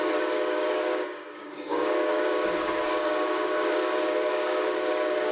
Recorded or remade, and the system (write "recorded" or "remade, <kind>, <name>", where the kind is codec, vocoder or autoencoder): remade, codec, DAC